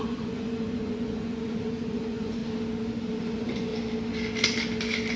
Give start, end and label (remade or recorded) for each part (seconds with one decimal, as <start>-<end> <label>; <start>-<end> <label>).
0.0-2.4 remade; 2.4-3.2 recorded; 3.2-3.7 remade; 3.7-5.2 recorded